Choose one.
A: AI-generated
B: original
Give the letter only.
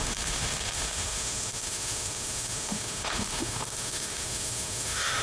A